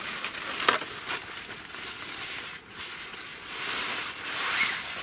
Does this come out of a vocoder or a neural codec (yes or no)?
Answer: no